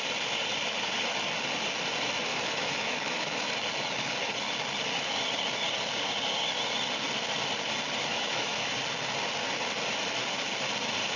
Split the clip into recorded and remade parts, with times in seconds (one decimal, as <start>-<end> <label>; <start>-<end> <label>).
0.0-2.3 recorded; 2.3-3.5 remade; 3.5-8.1 recorded; 8.1-8.7 remade; 8.7-11.2 recorded

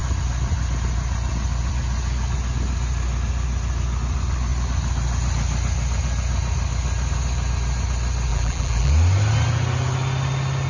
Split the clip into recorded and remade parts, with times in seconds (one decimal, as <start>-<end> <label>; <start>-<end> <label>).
0.0-8.3 recorded; 8.3-8.9 remade; 8.9-10.7 recorded

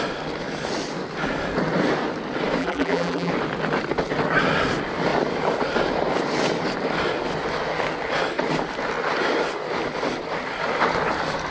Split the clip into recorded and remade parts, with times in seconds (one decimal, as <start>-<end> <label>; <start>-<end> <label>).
0.0-2.6 recorded; 2.6-3.3 remade; 3.3-11.5 recorded

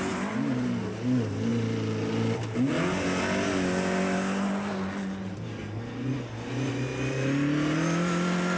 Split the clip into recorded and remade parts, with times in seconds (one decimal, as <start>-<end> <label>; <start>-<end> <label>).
0.0-8.6 recorded

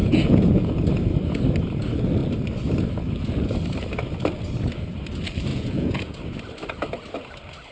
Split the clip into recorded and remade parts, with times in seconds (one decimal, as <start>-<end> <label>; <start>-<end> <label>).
0.0-0.7 remade; 0.7-5.5 recorded; 5.5-6.2 remade; 6.2-7.7 recorded